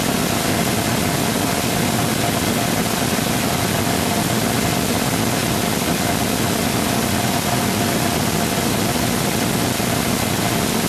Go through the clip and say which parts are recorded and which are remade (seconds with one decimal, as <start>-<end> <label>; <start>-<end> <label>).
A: 0.0-10.9 recorded